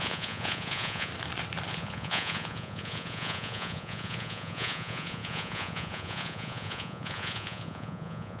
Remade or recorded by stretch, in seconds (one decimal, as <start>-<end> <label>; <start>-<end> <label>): 0.0-1.1 remade; 1.1-1.7 recorded; 1.7-8.4 remade